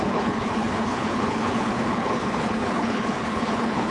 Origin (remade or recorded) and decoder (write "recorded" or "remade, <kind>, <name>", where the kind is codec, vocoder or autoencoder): remade, codec, HILCodec